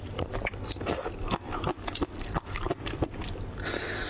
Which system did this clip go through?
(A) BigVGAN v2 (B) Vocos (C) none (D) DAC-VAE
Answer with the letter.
C